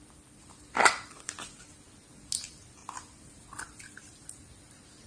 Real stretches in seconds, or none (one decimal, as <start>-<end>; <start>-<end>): 0.0-5.1